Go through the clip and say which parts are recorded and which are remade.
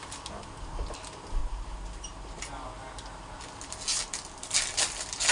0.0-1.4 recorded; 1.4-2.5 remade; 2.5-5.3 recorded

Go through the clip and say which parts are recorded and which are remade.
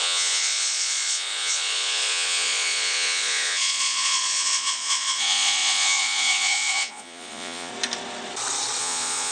0.0-7.7 remade; 7.7-8.8 recorded; 8.8-9.3 remade